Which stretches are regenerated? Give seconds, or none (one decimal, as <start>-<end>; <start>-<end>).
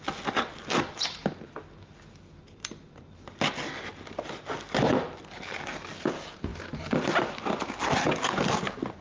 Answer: none